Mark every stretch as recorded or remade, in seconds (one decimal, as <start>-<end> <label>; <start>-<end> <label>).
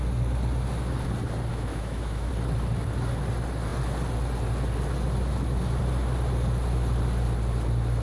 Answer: 0.0-1.5 recorded; 1.5-2.3 remade; 2.3-8.0 recorded